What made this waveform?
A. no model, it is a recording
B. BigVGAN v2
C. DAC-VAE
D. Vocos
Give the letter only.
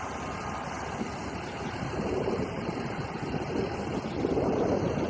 A